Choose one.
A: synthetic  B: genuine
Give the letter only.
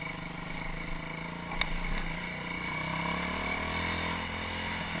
B